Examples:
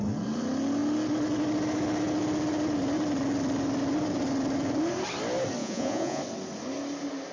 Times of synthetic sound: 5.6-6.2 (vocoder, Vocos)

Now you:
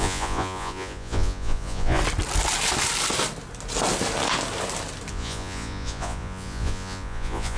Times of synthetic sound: 0.0-2.0 (vocoder, Vocos); 5.1-7.6

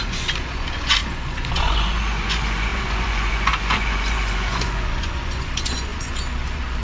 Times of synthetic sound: 0.0-6.8 (vocoder, Vocos)

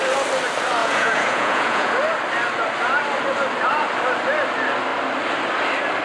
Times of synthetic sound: 0.8-1.9 (vocoder, Vocos)

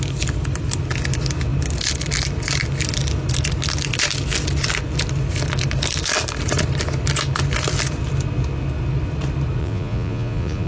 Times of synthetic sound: 9.6-10.7 (vocoder, Vocos)

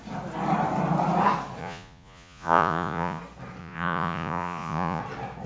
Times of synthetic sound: 1.6-3.2 (vocoder, Vocos); 3.6-5.0

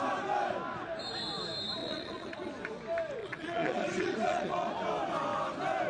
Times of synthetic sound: 1.8-2.5 (vocoder, Vocos); 3.2-4.7

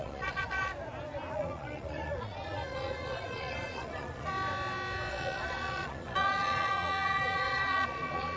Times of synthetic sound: 0.0-0.7 (vocoder, Vocos); 1.3-4.3; 5.1-8.4